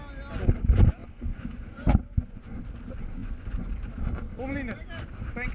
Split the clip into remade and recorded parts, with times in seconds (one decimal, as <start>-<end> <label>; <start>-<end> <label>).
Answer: 0.0-1.0 recorded; 1.0-2.6 remade; 2.6-3.2 recorded; 3.2-3.7 remade; 3.7-5.5 recorded